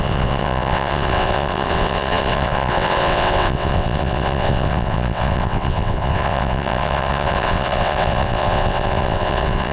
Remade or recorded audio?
remade